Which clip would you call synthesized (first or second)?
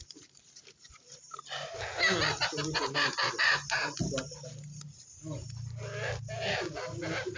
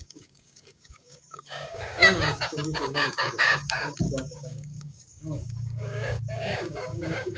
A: second